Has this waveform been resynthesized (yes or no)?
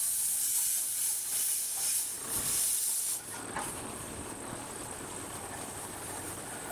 no